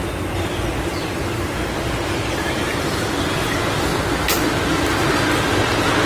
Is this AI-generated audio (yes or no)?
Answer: no